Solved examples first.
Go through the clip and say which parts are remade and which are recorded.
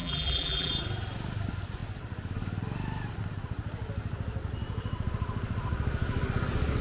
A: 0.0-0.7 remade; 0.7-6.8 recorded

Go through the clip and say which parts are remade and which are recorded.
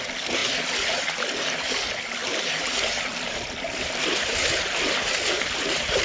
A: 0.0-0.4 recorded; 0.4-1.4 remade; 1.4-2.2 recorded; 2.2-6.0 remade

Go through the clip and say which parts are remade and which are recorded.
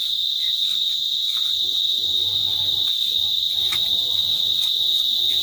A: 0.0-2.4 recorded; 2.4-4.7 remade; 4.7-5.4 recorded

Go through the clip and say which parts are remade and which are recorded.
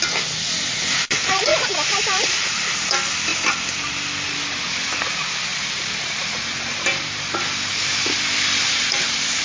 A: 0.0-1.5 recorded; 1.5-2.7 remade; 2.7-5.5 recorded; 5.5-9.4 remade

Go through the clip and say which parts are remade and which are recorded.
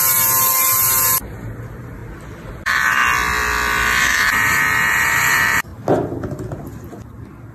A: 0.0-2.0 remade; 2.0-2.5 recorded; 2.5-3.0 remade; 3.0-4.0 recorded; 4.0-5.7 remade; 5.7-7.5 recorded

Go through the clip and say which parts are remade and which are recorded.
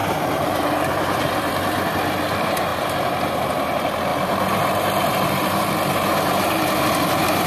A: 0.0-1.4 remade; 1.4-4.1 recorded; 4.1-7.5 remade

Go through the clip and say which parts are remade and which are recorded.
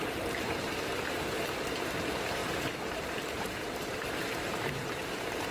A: 0.0-5.5 remade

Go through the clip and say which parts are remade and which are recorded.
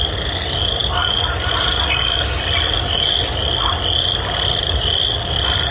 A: 0.0-5.7 recorded